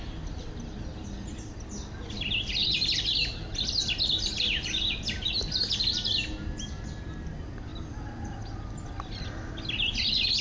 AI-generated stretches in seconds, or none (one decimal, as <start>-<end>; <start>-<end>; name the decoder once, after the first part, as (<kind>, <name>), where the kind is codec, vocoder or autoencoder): none